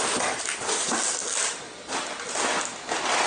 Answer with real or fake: real